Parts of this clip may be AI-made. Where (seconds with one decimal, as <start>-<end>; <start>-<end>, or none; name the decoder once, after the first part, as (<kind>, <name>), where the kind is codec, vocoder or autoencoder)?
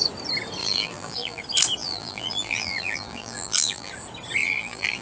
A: 0.6-1.4 (vocoder, BigVGAN v2); 1.8-3.9; 4.4-5.0